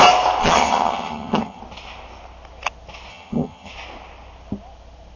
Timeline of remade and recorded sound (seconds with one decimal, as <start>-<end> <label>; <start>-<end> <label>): 0.0-0.4 recorded; 0.4-1.6 remade; 1.6-3.1 recorded; 3.1-3.7 remade; 3.7-5.2 recorded